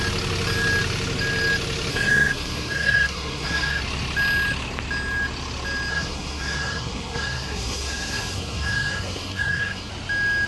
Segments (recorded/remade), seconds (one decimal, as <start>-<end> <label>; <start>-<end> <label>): 0.0-1.9 recorded; 1.9-3.8 remade; 3.8-5.9 recorded; 5.9-9.9 remade; 9.9-10.5 recorded